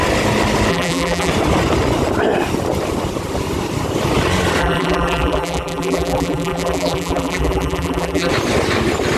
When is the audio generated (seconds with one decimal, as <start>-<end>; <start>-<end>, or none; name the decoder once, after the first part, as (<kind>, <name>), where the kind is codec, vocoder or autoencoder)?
0.7-1.3 (vocoder, BigVGAN v2); 4.6-8.3